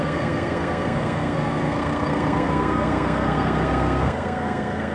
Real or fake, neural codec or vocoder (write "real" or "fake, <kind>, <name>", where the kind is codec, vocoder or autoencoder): fake, codec, SNAC